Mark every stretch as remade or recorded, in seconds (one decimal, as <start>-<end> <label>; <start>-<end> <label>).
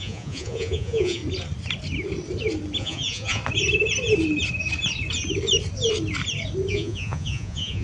0.0-1.2 remade; 1.2-2.8 recorded; 2.8-3.4 remade; 3.4-6.7 recorded; 6.7-7.8 remade